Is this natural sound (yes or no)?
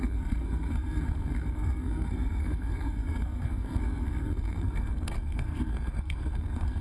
no